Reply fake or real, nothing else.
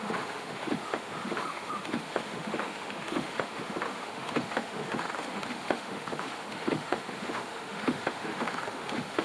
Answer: fake